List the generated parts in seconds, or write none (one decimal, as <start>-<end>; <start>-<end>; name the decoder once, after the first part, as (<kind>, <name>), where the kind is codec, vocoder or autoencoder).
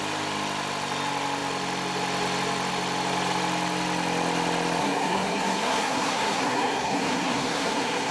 4.8-8.1 (codec, SNAC)